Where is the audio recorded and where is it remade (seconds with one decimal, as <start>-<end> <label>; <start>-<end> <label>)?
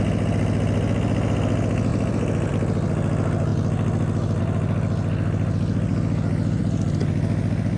0.0-7.8 recorded